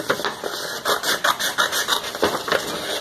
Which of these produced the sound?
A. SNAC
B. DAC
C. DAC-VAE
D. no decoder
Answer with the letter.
D